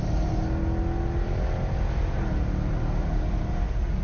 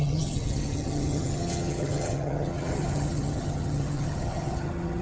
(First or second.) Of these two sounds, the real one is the first